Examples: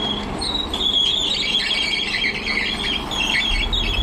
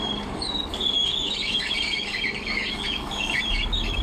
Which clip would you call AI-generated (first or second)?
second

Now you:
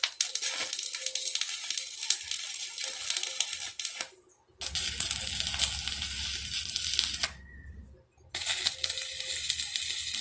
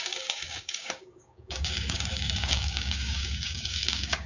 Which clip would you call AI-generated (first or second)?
second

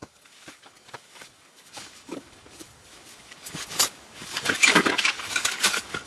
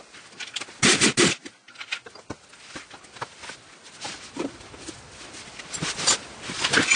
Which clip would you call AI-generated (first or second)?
first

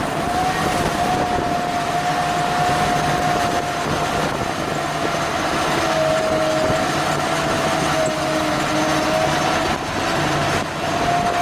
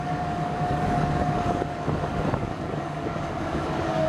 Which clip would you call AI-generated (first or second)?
second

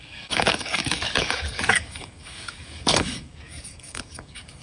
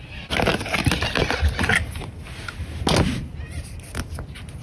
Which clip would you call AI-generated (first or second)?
first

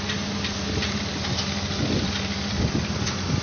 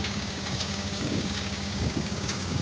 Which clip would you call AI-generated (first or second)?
second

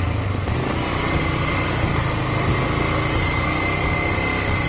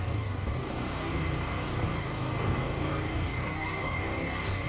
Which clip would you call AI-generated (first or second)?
second